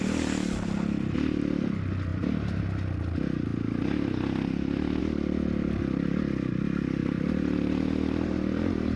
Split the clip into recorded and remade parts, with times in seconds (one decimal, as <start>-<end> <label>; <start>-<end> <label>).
0.0-2.1 recorded; 2.1-2.6 remade; 2.6-7.0 recorded; 7.0-9.0 remade